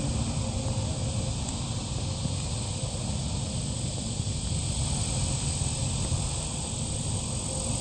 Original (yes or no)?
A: yes